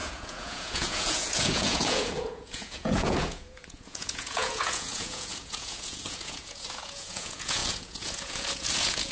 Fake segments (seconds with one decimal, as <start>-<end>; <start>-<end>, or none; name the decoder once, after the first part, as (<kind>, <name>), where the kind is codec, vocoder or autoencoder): 0.0-9.1 (vocoder, Vocos)